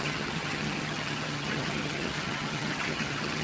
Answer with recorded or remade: remade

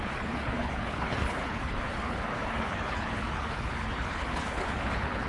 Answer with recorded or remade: remade